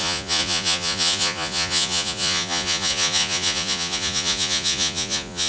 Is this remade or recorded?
remade